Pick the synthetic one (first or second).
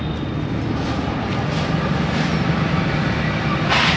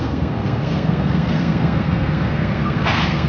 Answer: second